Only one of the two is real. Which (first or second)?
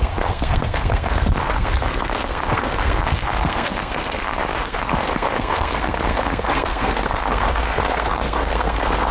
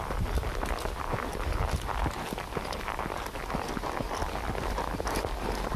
second